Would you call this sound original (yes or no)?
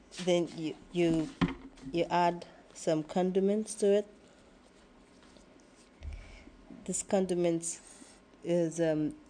yes